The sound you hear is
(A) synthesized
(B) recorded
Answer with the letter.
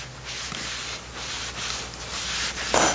B